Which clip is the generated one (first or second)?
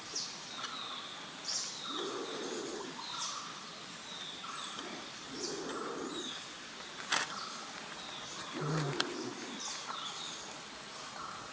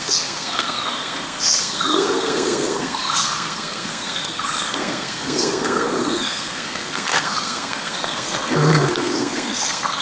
second